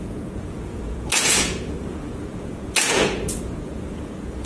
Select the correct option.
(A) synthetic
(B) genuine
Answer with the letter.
A